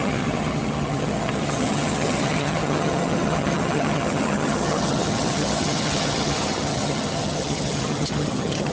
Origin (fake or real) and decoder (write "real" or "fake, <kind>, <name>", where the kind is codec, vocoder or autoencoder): fake, vocoder, HiFi-GAN